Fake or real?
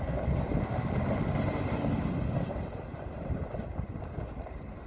real